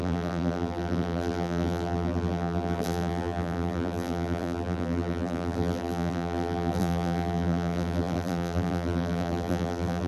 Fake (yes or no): yes